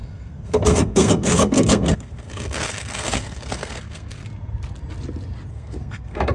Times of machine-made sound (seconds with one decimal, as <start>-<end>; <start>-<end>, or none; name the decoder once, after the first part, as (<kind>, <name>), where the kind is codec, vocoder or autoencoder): 0.0-4.2 (codec, SNAC); 5.5-6.3

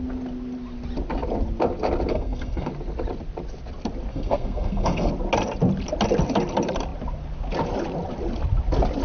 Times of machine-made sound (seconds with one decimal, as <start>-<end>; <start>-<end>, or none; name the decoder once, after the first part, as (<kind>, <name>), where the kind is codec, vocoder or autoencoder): 2.1-2.7 (codec, SNAC); 4.1-5.1

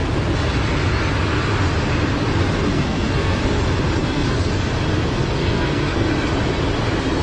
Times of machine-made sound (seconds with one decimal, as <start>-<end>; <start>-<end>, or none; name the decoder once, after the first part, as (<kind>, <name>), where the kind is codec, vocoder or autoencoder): 2.7-3.6 (codec, SNAC); 4.0-4.5; 5.4-6.1

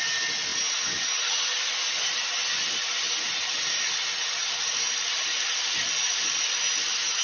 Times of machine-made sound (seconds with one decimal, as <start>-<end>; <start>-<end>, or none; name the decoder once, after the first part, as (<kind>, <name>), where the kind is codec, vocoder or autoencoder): none

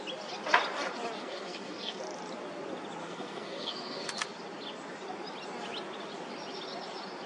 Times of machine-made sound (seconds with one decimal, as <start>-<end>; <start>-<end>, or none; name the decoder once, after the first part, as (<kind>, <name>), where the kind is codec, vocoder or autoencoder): 1.2-2.0 (codec, SNAC); 3.0-4.1

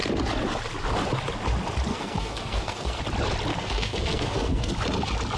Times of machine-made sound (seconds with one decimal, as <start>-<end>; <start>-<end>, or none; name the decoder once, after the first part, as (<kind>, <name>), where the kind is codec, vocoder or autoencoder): 1.9-3.0 (codec, SNAC); 3.5-4.7

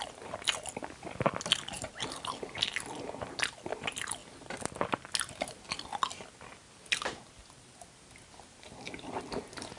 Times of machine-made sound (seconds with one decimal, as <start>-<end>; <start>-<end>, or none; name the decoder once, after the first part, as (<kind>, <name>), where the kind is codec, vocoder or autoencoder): none